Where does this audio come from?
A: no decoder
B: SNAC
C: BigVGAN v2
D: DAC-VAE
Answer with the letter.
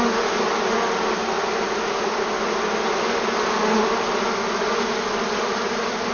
A